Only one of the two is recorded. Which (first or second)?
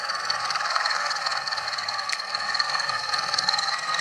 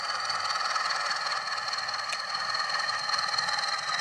second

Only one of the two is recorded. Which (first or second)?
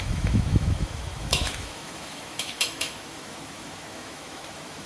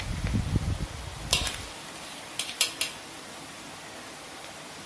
second